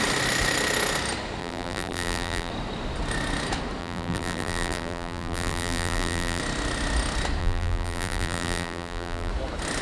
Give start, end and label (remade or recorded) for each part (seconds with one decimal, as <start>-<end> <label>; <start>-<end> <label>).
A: 0.0-1.4 recorded; 1.4-2.5 remade; 2.5-3.8 recorded; 3.8-6.4 remade; 6.4-7.4 recorded; 7.4-9.3 remade; 9.3-9.8 recorded